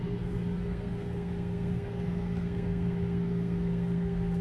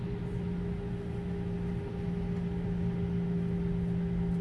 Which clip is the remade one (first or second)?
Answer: first